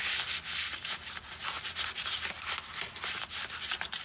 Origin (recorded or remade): recorded